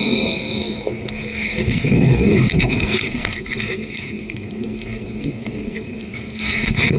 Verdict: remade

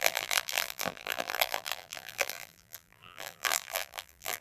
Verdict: remade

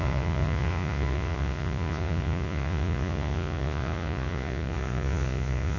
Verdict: remade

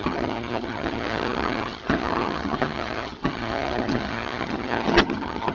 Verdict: remade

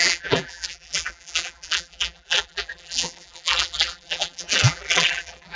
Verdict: remade